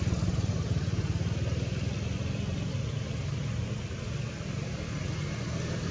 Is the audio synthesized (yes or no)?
no